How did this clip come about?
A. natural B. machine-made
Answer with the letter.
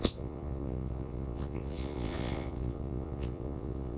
B